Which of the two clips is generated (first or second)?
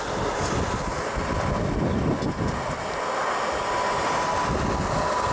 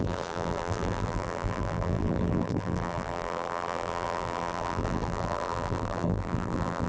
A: second